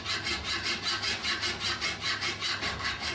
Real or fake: real